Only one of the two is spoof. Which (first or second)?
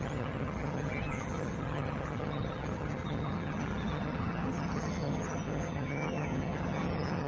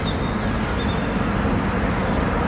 first